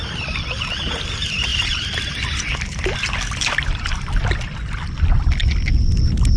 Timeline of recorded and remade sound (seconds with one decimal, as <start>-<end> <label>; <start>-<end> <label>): 0.0-1.5 recorded; 1.5-4.4 remade; 4.4-6.4 recorded